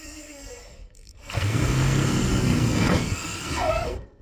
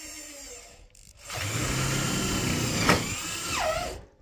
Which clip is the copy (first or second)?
first